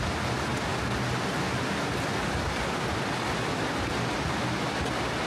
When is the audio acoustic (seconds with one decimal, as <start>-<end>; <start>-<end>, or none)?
0.0-5.3